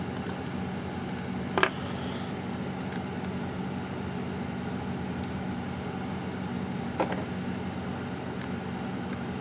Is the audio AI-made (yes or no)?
no